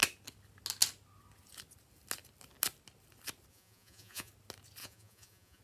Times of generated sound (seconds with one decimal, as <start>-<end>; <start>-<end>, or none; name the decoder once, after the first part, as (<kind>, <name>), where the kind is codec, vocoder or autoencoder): 3.5-4.3 (vocoder, Vocos); 4.8-5.6